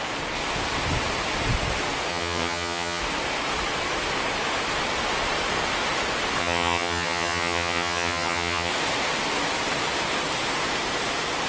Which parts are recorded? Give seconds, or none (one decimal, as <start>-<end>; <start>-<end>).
0.0-2.1; 3.0-6.4; 8.7-11.5

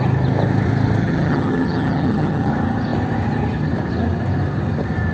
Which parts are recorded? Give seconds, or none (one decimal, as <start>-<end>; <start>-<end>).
0.0-1.0; 2.5-5.1